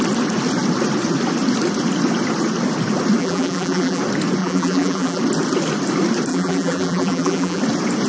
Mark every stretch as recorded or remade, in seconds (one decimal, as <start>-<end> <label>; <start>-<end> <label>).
0.0-3.2 recorded; 3.2-4.0 remade; 4.0-4.4 recorded; 4.4-5.2 remade; 5.2-6.3 recorded; 6.3-7.6 remade; 7.6-8.1 recorded

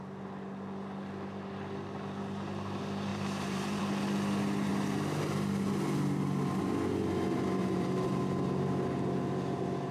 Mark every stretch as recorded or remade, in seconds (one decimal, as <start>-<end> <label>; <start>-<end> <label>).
0.0-3.1 recorded; 3.1-3.8 remade; 3.8-7.6 recorded; 7.6-8.2 remade; 8.2-9.9 recorded

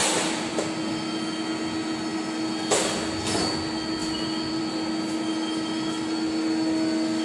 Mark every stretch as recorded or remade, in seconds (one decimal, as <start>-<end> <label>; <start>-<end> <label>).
0.0-0.6 remade; 0.6-7.2 recorded

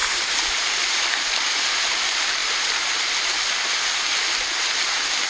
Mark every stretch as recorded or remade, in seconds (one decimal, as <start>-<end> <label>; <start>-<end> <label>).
0.0-1.0 remade; 1.0-5.3 recorded

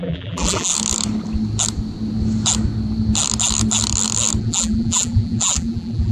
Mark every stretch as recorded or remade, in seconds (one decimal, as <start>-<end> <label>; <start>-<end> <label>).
0.0-0.7 remade; 0.7-4.4 recorded; 4.4-6.1 remade

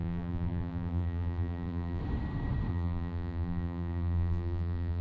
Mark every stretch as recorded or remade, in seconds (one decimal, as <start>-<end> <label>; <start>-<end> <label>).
0.0-2.0 remade; 2.0-2.7 recorded; 2.7-5.0 remade

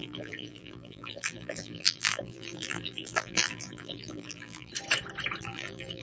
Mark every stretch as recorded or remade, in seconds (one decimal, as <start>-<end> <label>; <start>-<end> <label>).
0.0-4.7 remade; 4.7-5.4 recorded; 5.4-6.0 remade